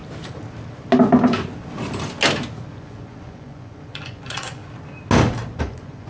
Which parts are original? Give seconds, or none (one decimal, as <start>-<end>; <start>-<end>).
0.0-2.7; 4.6-5.6